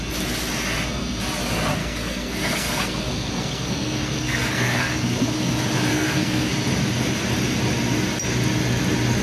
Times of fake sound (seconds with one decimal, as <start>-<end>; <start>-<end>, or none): 1.8-5.5; 5.9-6.5